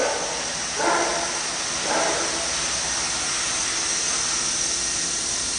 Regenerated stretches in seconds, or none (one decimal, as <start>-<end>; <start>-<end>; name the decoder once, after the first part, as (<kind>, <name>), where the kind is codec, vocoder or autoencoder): none